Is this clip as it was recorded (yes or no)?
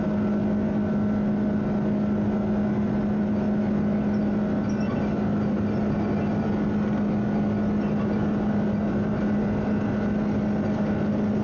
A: yes